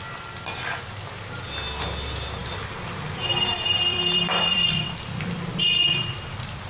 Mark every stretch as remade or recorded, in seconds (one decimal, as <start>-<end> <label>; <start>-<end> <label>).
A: 0.0-2.4 recorded; 2.4-6.7 remade